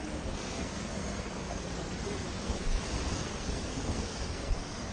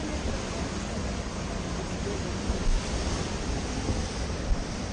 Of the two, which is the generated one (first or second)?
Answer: first